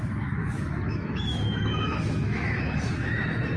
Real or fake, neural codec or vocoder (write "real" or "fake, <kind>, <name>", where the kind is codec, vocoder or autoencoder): fake, autoencoder, DAC-VAE